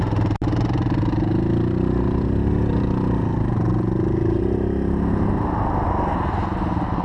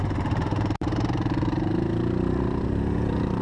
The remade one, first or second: second